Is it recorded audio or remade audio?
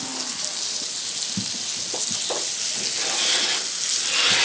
recorded